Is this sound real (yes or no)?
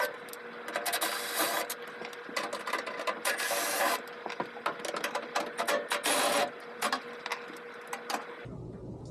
yes